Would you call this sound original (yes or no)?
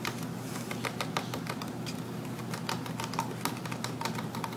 no